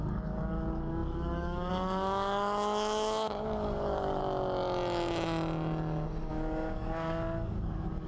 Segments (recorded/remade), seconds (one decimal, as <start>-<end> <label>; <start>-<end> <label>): 0.0-4.2 remade; 4.2-6.3 recorded; 6.3-8.1 remade